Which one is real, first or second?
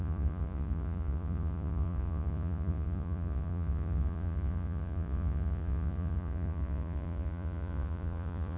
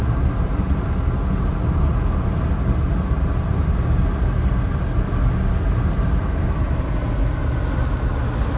second